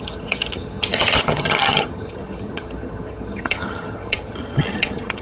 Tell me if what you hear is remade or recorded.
remade